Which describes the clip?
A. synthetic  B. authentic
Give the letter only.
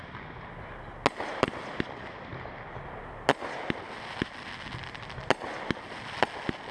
B